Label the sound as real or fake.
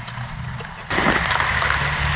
real